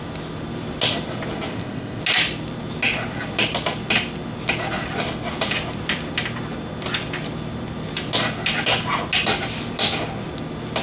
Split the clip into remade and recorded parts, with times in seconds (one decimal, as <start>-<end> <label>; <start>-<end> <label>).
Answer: 0.0-1.5 recorded; 1.5-2.0 remade; 2.0-10.8 recorded